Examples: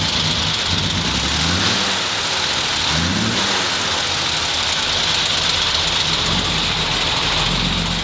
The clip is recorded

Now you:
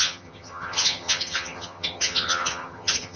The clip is remade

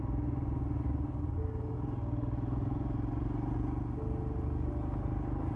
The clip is recorded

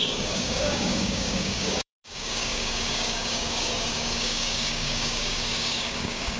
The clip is remade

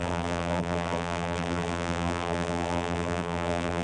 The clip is remade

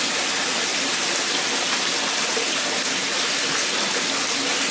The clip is recorded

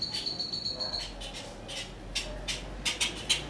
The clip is recorded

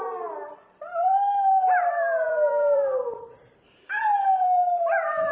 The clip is remade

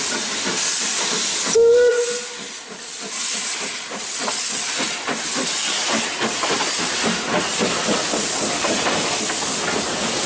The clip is recorded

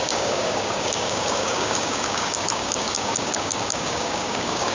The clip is remade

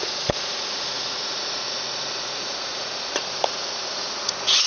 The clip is remade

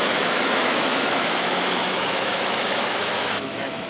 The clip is remade